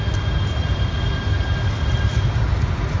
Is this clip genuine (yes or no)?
yes